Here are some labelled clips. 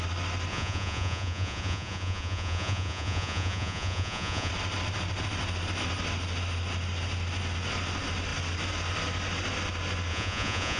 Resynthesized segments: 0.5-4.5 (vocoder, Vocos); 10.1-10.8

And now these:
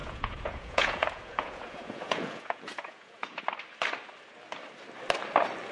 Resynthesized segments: 0.0-3.4 (vocoder, Vocos)

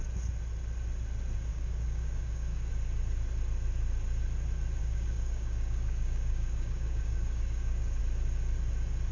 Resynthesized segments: 1.5-2.7 (codec, DAC); 4.8-8.0

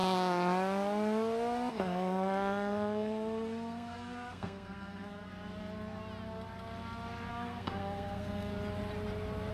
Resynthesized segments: 1.7-5.3 (codec, SNAC); 7.3-8.5

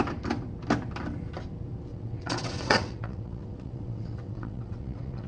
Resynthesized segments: 1.9-5.3 (vocoder, WaveNeXt)

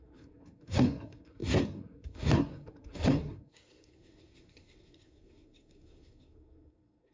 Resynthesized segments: 0.0-7.1 (codec, SNAC)

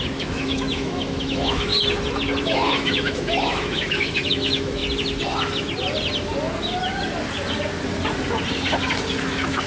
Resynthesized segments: 0.0-1.7 (autoencoder, DAC-VAE); 2.4-4.8; 9.2-9.7